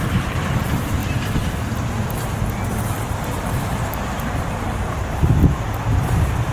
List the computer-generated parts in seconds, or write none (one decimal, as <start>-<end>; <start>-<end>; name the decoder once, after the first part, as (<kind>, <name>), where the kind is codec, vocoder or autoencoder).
0.0-1.0 (vocoder, BigVGAN v2); 4.9-5.4